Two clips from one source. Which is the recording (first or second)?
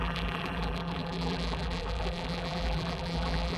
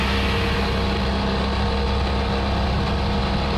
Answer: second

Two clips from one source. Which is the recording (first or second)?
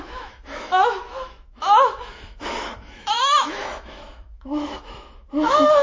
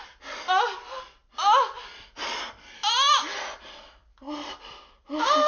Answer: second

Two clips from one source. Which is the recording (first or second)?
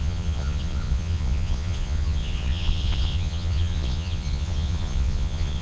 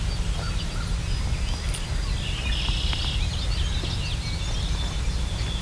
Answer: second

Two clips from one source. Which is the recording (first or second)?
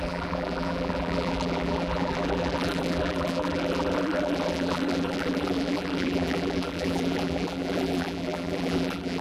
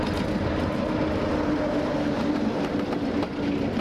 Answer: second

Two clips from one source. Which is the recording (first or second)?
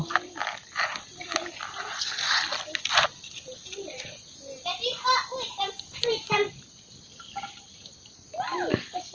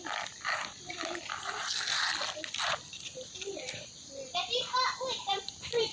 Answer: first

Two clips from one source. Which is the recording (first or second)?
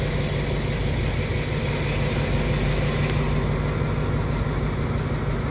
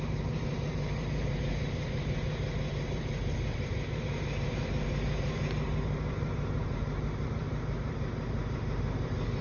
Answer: first